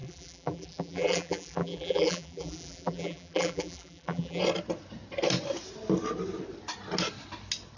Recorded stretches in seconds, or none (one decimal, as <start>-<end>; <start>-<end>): 4.4-7.8